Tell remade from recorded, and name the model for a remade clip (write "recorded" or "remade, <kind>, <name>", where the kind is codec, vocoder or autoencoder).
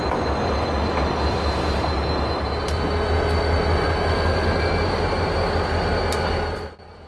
recorded